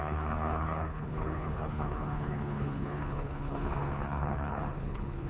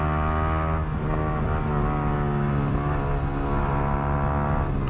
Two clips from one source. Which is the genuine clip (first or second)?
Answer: second